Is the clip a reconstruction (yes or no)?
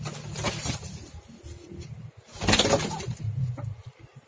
no